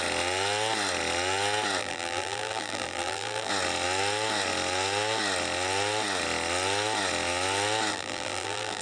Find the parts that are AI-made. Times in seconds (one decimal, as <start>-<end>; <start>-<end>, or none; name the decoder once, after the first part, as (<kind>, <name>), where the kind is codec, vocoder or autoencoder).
1.8-3.5 (vocoder, BigVGAN v2); 7.9-8.8

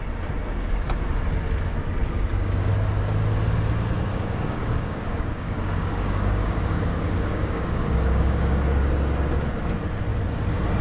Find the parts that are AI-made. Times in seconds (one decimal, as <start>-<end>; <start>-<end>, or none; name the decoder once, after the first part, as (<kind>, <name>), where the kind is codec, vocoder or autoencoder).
2.0-2.7 (codec, DAC); 4.1-8.7

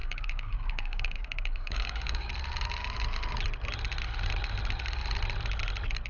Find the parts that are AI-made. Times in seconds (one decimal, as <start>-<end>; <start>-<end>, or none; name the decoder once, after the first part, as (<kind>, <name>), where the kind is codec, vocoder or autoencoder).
0.0-2.3 (codec, DAC)

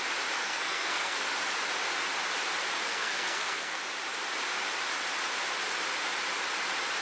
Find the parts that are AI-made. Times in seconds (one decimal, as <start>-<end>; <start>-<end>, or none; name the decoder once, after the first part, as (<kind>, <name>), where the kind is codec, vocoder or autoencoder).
0.4-1.2 (codec, SNAC); 2.9-3.8

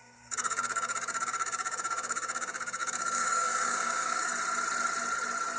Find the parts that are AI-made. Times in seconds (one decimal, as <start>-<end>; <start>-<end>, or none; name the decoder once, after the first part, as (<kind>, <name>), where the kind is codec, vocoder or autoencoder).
0.0-4.3 (codec, DAC)

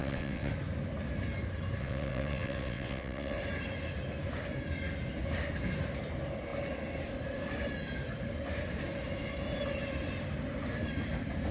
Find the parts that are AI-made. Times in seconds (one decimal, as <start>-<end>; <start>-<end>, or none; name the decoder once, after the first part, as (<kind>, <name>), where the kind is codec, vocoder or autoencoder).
0.0-0.5 (vocoder, WaveNeXt); 1.8-3.4

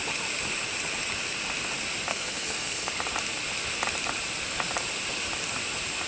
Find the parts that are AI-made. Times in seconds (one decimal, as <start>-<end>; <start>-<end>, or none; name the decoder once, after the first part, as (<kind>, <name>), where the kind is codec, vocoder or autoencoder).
2.1-2.9 (codec, SNAC)